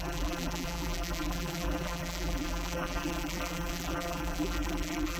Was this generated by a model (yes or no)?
yes